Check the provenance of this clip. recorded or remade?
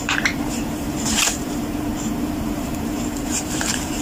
remade